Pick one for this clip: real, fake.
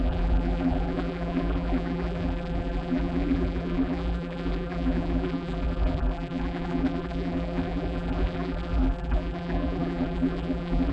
fake